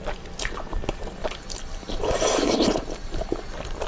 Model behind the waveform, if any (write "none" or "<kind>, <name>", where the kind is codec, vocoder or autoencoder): vocoder, BigVGAN v2